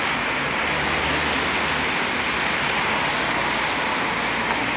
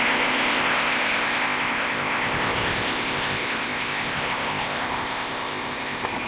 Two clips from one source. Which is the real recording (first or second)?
first